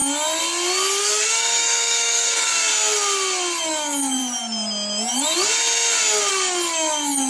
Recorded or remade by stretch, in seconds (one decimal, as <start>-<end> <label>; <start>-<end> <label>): 0.0-1.0 recorded; 1.0-2.7 remade; 2.7-3.6 recorded; 3.6-4.2 remade; 4.2-6.3 recorded; 6.3-7.3 remade